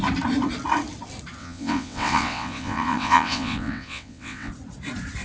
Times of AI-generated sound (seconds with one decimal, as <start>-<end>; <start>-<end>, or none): 1.4-4.5